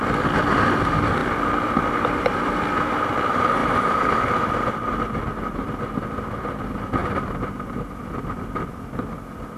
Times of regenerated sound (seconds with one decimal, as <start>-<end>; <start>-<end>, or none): 1.2-2.2; 3.6-6.6

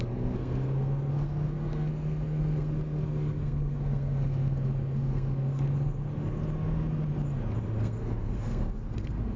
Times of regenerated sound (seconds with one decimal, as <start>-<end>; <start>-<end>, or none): 0.0-6.0; 7.8-9.4

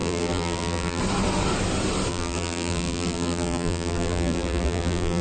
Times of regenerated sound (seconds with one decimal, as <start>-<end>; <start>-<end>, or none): 0.0-1.0; 2.1-5.2

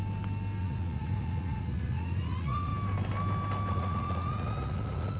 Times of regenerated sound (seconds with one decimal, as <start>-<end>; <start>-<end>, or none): 0.6-2.7; 3.7-5.2

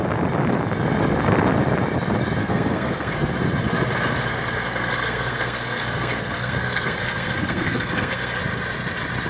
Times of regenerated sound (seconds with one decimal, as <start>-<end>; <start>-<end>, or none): 2.4-3.3; 4.3-8.4

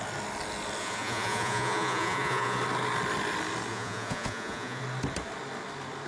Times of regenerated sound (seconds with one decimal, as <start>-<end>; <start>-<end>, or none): 0.8-2.6; 3.7-4.8

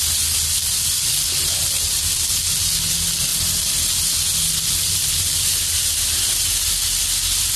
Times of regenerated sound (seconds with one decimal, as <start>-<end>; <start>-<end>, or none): none

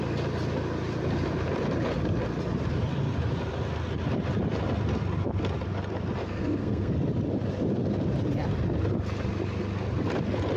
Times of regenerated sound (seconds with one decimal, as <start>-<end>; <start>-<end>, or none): 6.2-6.9